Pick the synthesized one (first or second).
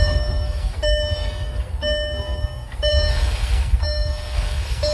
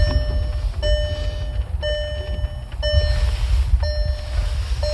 first